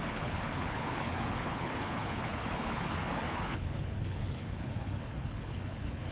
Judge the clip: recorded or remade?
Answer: remade